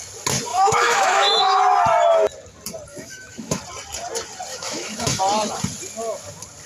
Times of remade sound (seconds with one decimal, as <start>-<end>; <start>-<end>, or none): 0.5-1.6; 2.9-3.6; 4.5-5.2